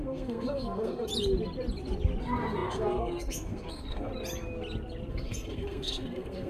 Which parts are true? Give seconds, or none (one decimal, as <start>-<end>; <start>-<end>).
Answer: 1.1-2.2; 4.1-5.1